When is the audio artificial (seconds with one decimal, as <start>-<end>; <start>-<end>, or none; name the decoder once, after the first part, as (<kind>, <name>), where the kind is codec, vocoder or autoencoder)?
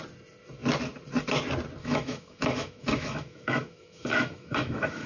1.8-5.1 (autoencoder, DAC-VAE)